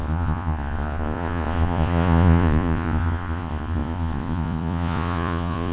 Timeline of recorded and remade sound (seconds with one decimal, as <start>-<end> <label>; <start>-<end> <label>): 0.0-5.7 remade